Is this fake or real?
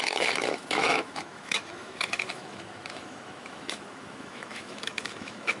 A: fake